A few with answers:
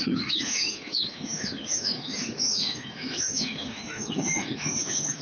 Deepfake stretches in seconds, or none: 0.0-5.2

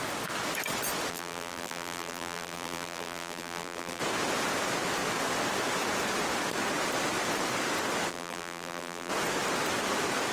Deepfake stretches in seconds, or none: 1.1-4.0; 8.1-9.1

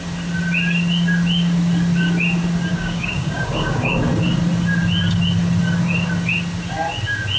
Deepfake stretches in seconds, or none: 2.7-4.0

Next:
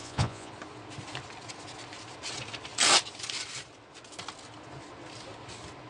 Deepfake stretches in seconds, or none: 0.0-0.5

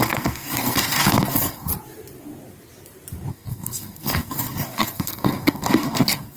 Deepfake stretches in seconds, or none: 0.0-1.7; 3.3-6.4